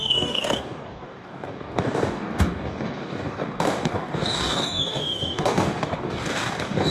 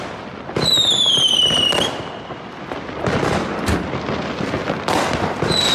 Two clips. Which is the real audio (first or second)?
second